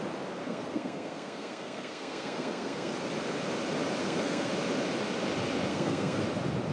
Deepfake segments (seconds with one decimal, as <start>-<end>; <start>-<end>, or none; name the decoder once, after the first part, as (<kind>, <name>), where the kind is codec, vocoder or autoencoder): 0.4-2.9 (codec, SNAC); 4.0-4.5; 5.7-6.2